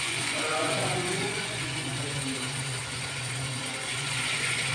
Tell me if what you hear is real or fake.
fake